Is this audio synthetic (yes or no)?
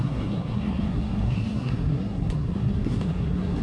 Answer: yes